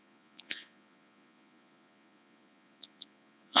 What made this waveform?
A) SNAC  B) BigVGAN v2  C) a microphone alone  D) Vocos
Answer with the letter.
D